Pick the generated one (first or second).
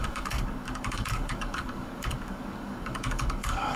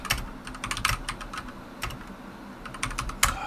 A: first